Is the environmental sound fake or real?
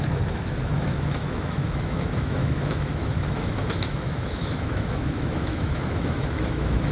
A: fake